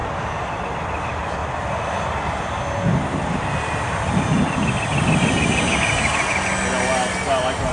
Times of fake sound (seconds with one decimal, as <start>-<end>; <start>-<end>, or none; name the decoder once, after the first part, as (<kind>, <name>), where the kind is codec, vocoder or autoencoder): 0.0-0.6 (vocoder, BigVGAN v2); 1.4-2.4